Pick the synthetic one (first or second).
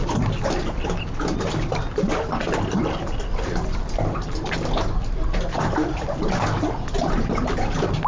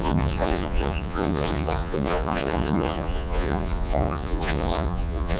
second